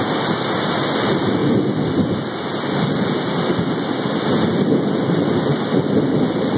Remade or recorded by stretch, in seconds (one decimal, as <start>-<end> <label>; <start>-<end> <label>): 0.0-6.6 recorded

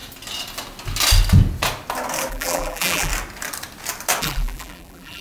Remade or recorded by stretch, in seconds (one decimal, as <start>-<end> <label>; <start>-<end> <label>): 0.0-2.3 recorded; 2.3-3.1 remade; 3.1-4.2 recorded; 4.2-5.2 remade

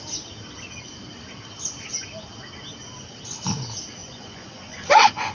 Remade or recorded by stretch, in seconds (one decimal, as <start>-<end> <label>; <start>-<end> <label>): 0.0-4.0 recorded; 4.0-5.3 remade